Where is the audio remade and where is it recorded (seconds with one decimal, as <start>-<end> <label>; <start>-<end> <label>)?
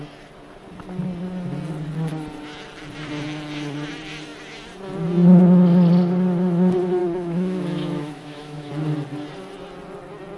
0.0-7.0 recorded; 7.0-8.7 remade; 8.7-10.4 recorded